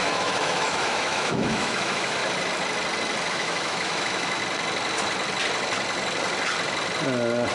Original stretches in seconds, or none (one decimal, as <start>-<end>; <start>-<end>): 2.2-3.3; 4.4-7.5